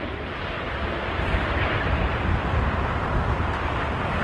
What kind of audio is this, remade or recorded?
remade